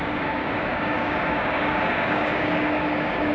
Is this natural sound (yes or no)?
no